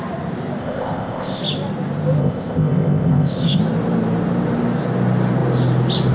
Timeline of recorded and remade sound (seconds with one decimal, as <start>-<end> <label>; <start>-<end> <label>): 0.0-0.6 recorded; 0.6-1.4 remade; 1.4-2.2 recorded; 2.2-3.6 remade; 3.6-6.1 recorded